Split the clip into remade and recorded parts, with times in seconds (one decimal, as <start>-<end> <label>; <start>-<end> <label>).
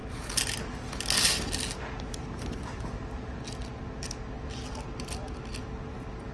0.0-6.3 recorded